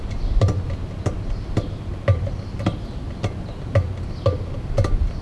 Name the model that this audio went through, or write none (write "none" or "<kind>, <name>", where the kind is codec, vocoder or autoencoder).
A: none